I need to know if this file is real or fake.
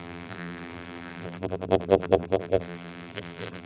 fake